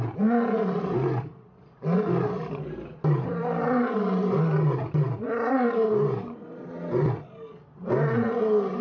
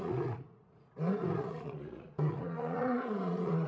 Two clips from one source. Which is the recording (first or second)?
first